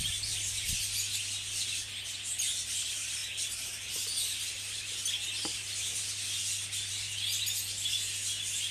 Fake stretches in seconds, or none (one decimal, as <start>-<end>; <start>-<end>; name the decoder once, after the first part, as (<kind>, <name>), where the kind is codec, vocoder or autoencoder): none